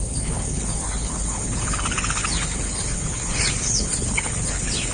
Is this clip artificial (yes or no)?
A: yes